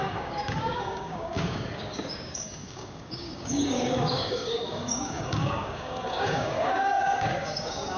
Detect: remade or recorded remade